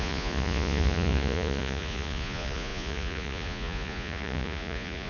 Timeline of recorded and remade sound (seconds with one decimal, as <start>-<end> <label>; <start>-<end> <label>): 0.0-5.1 remade